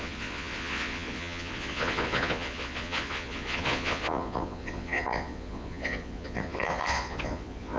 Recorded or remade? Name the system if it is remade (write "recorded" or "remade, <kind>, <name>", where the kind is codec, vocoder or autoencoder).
remade, vocoder, Vocos